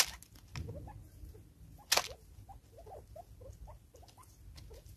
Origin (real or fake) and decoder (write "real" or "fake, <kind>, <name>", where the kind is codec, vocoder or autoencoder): real